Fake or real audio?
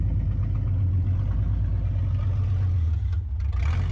real